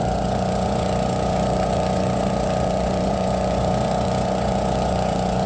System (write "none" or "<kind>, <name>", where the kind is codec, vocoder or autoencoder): vocoder, Vocos